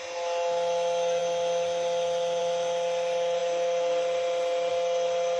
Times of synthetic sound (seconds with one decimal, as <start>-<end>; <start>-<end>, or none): none